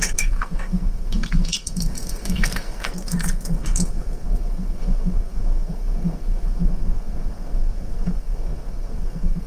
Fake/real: fake